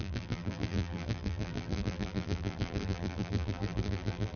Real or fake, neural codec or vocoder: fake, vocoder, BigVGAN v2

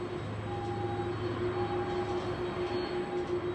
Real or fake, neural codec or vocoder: real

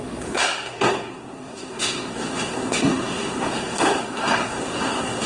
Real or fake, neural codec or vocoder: fake, codec, SNAC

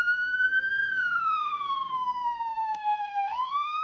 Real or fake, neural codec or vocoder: fake, autoencoder, DAC-VAE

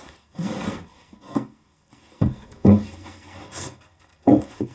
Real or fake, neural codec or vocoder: fake, codec, SNAC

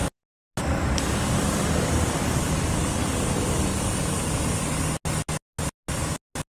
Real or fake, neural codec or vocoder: real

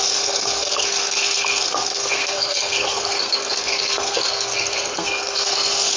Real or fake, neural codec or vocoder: fake, codec, SNAC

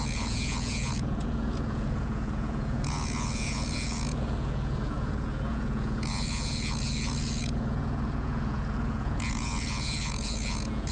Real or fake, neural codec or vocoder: fake, vocoder, Vocos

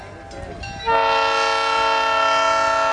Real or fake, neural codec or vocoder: real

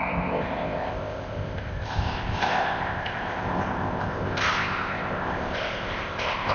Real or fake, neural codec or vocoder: fake, codec, ZipCodec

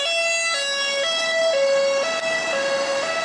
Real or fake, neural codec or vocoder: real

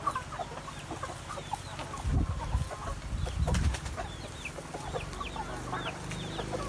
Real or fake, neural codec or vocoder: real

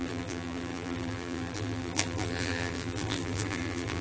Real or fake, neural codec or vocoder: fake, vocoder, BigVGAN v2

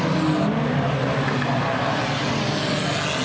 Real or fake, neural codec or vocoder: real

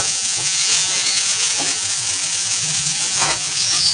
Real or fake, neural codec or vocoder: fake, vocoder, Vocos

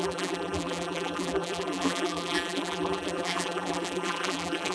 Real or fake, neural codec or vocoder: fake, vocoder, BigVGAN v2